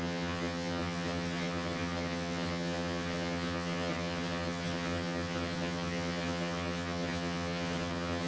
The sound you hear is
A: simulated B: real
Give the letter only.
A